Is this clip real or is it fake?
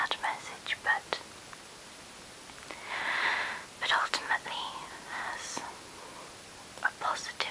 real